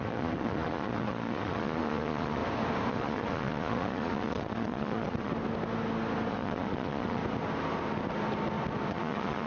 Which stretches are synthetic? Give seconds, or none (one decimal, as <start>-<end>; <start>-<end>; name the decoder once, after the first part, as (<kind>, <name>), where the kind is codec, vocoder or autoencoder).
0.0-2.4 (vocoder, Vocos); 2.9-5.3; 6.3-7.2; 8.9-9.5